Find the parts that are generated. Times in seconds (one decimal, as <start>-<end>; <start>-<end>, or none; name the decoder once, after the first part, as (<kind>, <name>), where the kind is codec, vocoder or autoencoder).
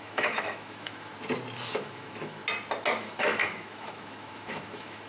0.0-1.1 (autoencoder, DAC-VAE); 1.7-2.4; 3.0-5.1